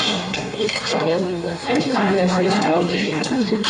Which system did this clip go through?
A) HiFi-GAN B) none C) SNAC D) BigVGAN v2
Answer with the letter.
C